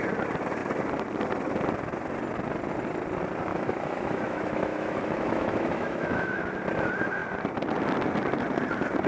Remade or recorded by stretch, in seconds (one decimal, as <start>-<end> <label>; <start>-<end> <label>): 0.0-3.5 recorded; 3.5-6.4 remade; 6.4-9.1 recorded